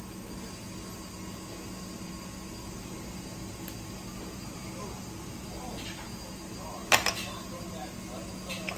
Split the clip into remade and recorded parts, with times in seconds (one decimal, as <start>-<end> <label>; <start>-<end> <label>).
0.0-8.8 recorded